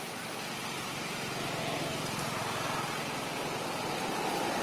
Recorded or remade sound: recorded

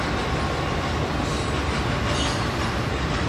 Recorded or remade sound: recorded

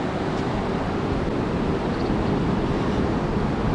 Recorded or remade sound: recorded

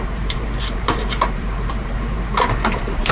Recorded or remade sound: remade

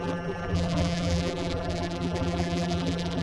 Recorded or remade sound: remade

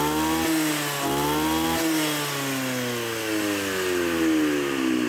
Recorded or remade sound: recorded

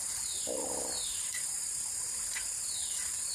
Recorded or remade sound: recorded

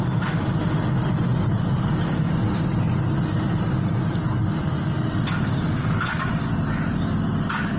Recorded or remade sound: remade